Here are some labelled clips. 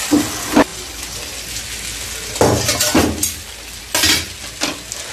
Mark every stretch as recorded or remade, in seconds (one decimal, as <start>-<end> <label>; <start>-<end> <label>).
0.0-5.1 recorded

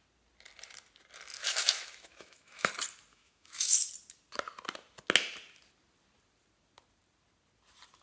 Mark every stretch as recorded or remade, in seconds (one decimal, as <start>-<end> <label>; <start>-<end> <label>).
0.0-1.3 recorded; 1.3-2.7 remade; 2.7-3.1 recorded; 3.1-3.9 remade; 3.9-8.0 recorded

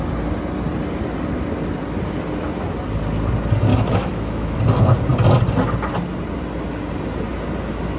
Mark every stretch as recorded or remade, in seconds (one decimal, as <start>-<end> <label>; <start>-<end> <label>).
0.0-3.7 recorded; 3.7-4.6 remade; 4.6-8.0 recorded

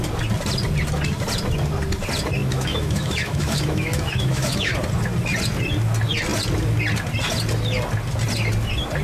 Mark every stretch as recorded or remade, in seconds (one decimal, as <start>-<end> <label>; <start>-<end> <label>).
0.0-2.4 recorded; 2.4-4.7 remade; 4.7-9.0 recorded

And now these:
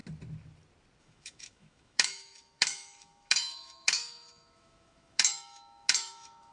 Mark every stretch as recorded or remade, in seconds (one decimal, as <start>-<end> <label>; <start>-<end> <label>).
0.0-1.0 recorded; 1.0-6.5 remade

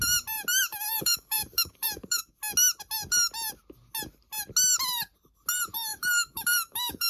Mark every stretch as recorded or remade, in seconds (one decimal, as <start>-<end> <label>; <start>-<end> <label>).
0.0-0.7 recorded; 0.7-2.4 remade; 2.4-5.9 recorded; 5.9-7.1 remade